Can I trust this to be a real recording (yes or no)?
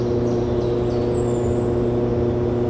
yes